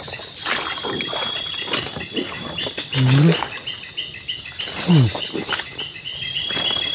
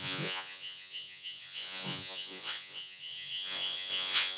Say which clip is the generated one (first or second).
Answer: second